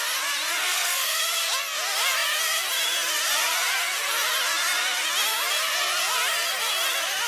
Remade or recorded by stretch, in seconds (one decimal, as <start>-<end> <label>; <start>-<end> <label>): 0.0-0.6 recorded; 0.6-1.2 remade; 1.2-7.3 recorded